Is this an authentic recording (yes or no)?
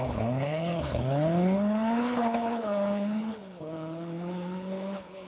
no